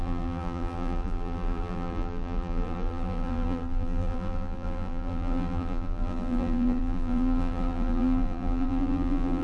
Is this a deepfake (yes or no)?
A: yes